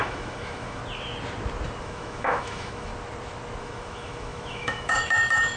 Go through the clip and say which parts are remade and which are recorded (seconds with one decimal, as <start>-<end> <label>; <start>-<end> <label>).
0.0-0.8 remade; 0.8-1.8 recorded; 1.8-2.9 remade; 2.9-3.6 recorded; 3.6-5.6 remade